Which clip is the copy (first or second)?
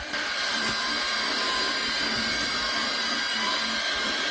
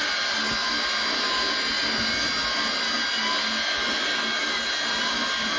first